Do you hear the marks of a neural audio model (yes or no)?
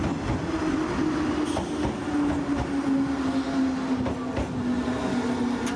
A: no